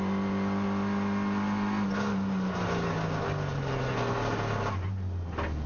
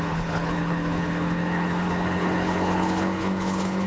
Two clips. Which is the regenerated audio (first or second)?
second